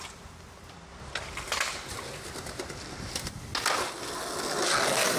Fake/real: real